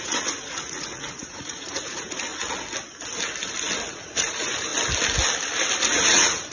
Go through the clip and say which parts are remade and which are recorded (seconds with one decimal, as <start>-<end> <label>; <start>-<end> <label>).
0.0-2.3 remade; 2.3-3.9 recorded; 3.9-4.7 remade; 4.7-5.8 recorded; 5.8-6.5 remade